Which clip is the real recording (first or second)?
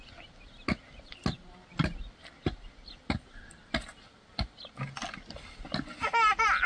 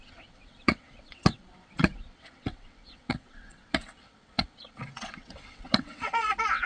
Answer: first